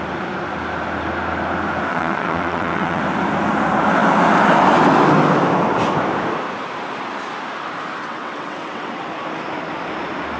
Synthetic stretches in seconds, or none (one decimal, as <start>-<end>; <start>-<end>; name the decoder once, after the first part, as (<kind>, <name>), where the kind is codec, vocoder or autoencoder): 1.9-3.0 (vocoder, WaveNeXt); 8.0-9.0